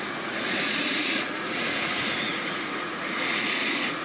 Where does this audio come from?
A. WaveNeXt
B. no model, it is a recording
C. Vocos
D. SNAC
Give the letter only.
C